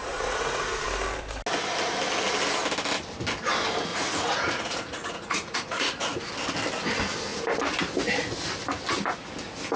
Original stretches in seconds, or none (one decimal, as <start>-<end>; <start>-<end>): 0.6-3.9; 6.3-9.8